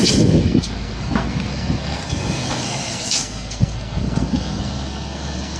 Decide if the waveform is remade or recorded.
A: remade